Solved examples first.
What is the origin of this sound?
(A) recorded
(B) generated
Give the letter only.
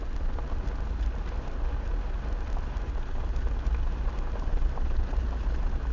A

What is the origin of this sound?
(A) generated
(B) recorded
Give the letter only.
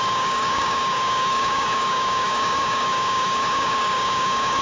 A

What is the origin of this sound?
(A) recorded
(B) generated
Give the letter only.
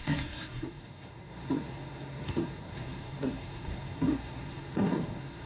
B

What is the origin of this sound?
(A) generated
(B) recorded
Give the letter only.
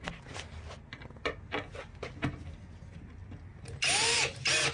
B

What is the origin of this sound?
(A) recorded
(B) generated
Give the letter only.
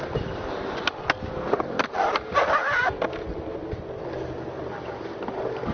A